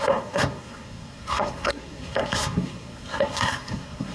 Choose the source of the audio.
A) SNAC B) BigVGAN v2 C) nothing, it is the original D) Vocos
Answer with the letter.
A